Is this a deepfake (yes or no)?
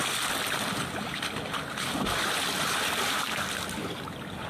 no